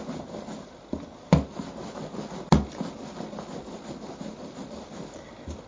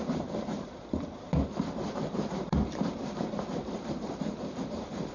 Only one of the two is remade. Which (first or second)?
second